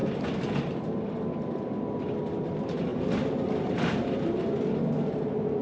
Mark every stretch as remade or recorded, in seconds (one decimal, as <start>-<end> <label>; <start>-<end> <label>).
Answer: 0.0-5.6 recorded